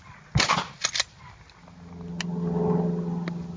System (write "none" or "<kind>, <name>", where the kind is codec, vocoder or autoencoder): none